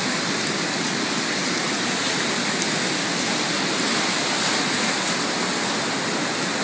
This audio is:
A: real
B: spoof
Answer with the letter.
A